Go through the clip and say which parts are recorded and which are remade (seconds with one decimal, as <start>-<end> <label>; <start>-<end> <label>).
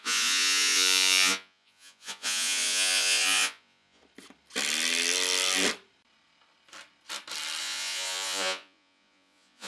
0.0-4.0 remade; 4.0-7.6 recorded; 7.6-9.7 remade